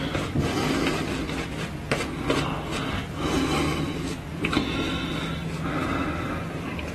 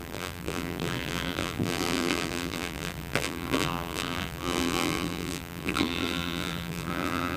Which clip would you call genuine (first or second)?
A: first